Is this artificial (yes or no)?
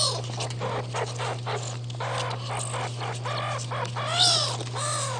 no